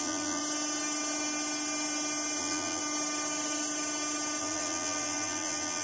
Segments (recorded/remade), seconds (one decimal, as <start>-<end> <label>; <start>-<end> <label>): 0.0-0.4 remade; 0.4-2.4 recorded; 2.4-2.8 remade; 2.8-4.4 recorded; 4.4-5.8 remade